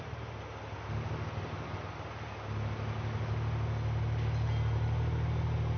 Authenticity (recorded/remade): recorded